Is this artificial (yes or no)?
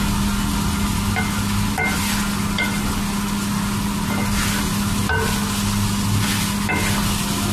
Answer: no